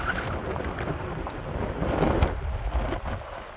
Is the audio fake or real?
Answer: real